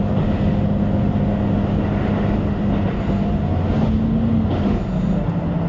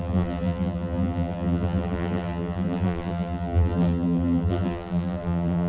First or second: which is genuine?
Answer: first